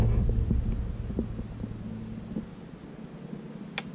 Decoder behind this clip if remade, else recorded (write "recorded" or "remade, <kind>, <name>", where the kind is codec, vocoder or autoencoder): recorded